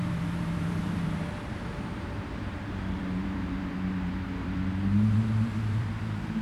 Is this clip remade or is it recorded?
remade